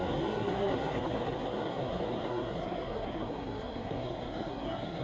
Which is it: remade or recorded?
remade